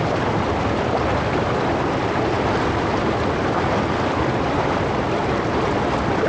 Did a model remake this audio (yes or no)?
no